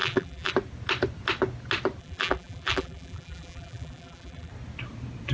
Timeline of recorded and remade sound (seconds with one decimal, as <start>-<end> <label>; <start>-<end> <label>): 0.0-0.5 remade; 0.5-2.0 recorded; 2.0-4.5 remade; 4.5-5.3 recorded